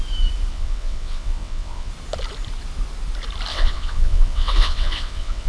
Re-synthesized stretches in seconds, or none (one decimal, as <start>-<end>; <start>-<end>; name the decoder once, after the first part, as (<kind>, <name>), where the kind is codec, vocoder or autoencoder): 0.5-1.9 (vocoder, WaveNeXt); 3.5-5.5